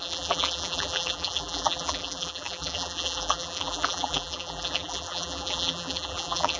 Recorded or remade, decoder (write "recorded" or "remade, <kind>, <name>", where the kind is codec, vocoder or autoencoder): remade, vocoder, BigVGAN v2